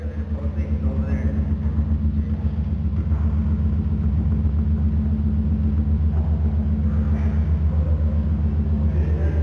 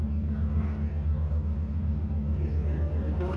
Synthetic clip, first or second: second